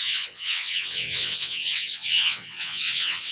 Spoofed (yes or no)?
yes